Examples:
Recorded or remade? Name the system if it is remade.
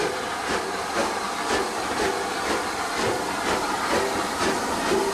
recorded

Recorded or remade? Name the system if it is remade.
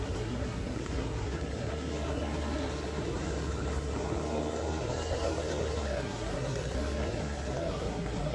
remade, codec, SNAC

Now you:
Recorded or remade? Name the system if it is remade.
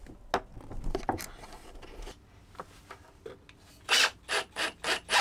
recorded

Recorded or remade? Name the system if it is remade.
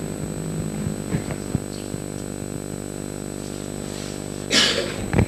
recorded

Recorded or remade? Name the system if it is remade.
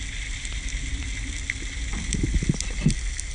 recorded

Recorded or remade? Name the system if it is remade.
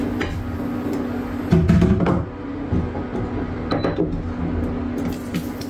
recorded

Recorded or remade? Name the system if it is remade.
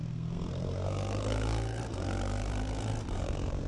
remade, codec, SNAC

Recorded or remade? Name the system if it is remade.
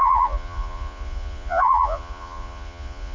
remade, vocoder, Vocos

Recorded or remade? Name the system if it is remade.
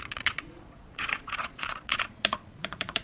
remade, vocoder, Vocos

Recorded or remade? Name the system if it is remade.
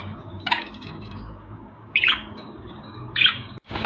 remade, codec, DAC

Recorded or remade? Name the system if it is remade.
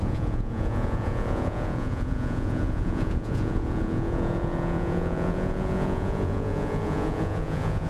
remade, vocoder, Vocos